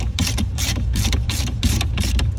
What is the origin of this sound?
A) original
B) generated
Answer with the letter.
B